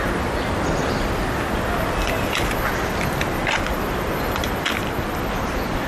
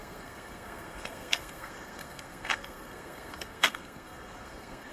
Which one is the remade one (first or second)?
second